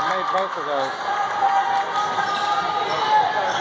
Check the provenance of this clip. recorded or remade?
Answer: recorded